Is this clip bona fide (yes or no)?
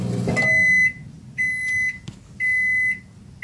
yes